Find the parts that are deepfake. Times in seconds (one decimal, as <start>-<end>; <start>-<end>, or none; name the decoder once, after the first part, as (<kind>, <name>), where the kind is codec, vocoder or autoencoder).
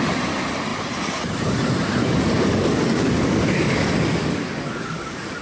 2.0-5.4 (codec, DAC)